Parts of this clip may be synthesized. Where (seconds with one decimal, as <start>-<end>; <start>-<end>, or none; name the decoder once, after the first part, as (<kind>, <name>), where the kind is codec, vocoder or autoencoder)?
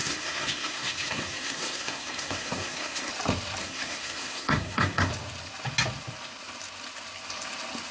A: 0.0-3.1 (codec, SNAC); 3.6-5.1